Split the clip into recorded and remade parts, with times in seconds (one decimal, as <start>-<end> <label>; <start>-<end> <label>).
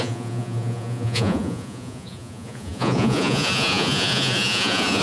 0.0-5.0 remade